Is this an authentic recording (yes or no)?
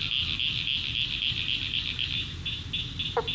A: yes